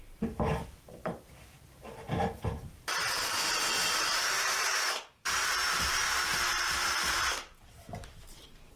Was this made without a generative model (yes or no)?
no